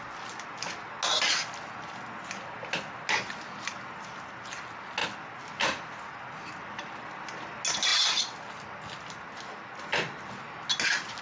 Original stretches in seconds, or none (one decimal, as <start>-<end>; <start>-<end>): 0.0-11.2